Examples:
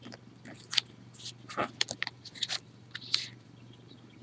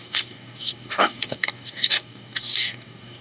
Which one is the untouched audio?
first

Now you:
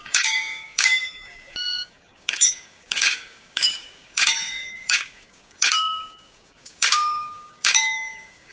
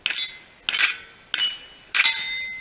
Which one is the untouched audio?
second